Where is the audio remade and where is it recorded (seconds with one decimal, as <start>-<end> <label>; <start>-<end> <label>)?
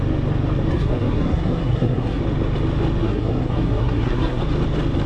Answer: 0.0-0.7 recorded; 0.7-2.2 remade; 2.2-3.0 recorded; 3.0-4.4 remade; 4.4-5.1 recorded